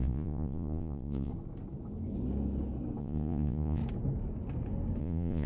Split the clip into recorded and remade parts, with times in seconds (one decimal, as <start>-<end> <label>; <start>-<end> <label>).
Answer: 0.0-1.3 remade; 1.3-3.0 recorded; 3.0-3.8 remade; 3.8-5.0 recorded; 5.0-5.5 remade